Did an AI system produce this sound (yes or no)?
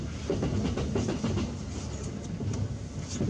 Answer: no